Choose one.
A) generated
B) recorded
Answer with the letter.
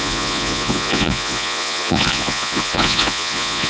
A